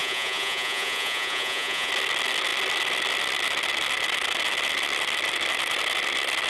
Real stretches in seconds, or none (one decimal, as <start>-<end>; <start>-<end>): 1.9-6.5